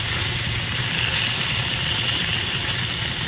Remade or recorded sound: recorded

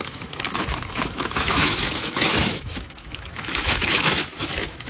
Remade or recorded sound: remade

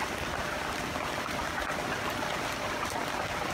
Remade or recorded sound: recorded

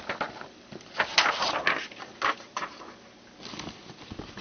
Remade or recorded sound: recorded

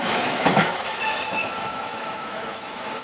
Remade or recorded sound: remade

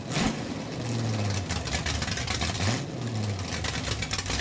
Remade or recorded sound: recorded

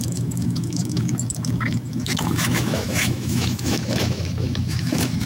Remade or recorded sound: remade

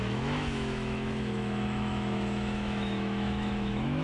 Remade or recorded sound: remade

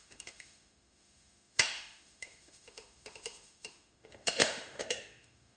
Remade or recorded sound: remade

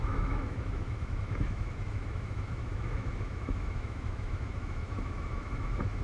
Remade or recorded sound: remade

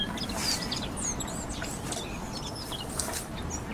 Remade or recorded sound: recorded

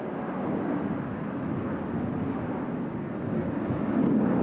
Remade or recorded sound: recorded